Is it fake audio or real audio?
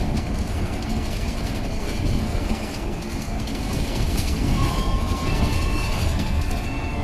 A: fake